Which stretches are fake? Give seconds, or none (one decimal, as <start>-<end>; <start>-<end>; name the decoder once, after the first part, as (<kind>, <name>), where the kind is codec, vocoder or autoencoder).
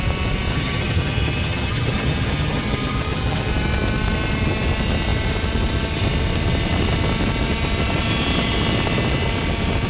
0.5-3.5 (vocoder, HiFi-GAN)